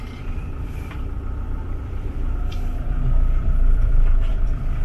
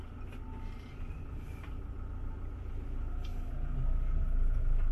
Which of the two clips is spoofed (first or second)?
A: first